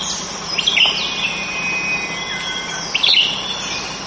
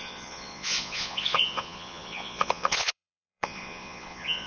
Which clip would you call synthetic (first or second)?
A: second